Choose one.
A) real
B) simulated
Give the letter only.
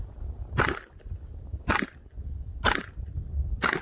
A